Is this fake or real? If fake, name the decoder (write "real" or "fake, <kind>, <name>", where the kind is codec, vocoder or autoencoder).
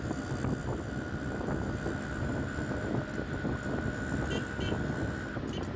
real